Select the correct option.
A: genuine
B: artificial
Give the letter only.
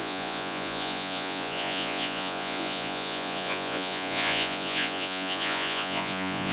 B